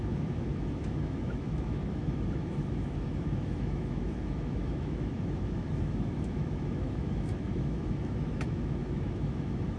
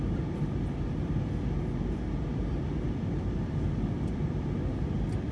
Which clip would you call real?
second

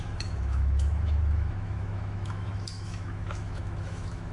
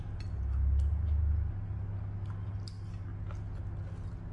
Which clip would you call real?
second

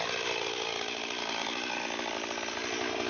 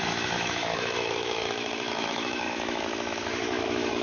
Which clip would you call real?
first